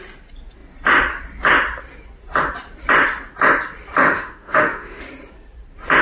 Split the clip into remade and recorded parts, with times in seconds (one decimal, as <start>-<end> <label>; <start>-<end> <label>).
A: 0.0-4.0 recorded; 4.0-5.0 remade; 5.0-6.0 recorded